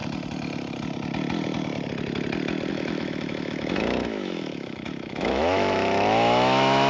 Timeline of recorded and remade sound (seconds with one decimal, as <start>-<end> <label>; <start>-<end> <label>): 0.0-2.7 recorded; 2.7-6.9 remade